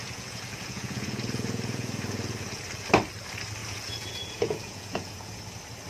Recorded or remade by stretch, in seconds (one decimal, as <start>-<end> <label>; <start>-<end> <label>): 0.0-2.6 remade; 2.6-3.6 recorded; 3.6-5.4 remade; 5.4-5.9 recorded